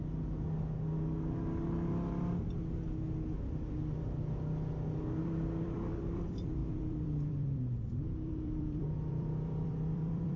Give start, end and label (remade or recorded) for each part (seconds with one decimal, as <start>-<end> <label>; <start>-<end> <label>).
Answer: 0.0-5.2 recorded; 5.2-10.4 remade